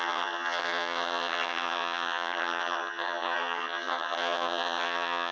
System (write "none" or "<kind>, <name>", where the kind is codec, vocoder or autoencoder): vocoder, HiFi-GAN